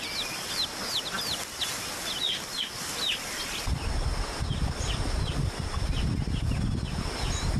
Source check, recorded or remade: recorded